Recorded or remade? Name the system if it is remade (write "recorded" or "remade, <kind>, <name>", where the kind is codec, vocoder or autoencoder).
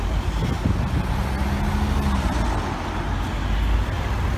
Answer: recorded